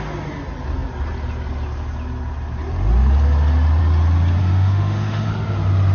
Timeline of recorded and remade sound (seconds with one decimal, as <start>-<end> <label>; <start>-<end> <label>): 0.0-4.4 recorded; 4.4-5.3 remade; 5.3-5.9 recorded